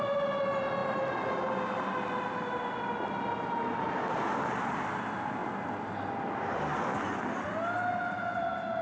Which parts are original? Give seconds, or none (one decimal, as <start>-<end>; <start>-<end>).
0.0-8.8